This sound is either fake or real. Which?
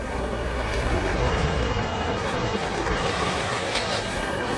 fake